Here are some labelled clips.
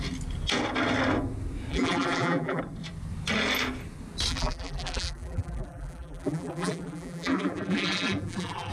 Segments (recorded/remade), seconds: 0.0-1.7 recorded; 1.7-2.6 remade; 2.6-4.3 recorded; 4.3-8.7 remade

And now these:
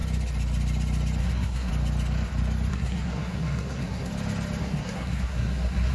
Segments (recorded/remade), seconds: 0.0-1.2 recorded; 1.2-1.7 remade; 1.7-2.7 recorded; 2.7-4.1 remade; 4.1-4.6 recorded; 4.6-5.9 remade

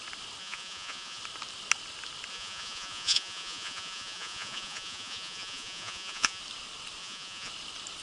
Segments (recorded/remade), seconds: 0.0-0.4 recorded; 0.4-1.2 remade; 1.2-2.3 recorded; 2.3-6.4 remade; 6.4-7.0 recorded; 7.0-7.5 remade; 7.5-8.0 recorded

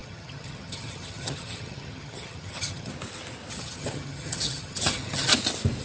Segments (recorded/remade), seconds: 0.0-2.9 remade; 2.9-3.5 recorded; 3.5-5.3 remade; 5.3-5.8 recorded

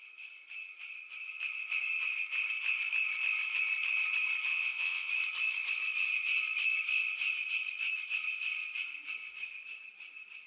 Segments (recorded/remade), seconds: 0.0-4.5 recorded; 4.5-5.1 remade; 5.1-10.5 recorded

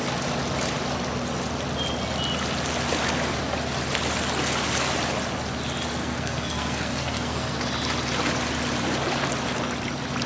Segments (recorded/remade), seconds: 0.0-6.0 recorded; 6.0-7.6 remade; 7.6-10.3 recorded

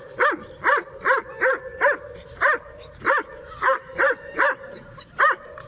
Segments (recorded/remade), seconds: 0.0-1.7 recorded; 1.7-5.1 remade; 5.1-5.7 recorded